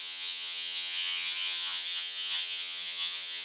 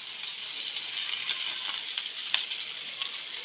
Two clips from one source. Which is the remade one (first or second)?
first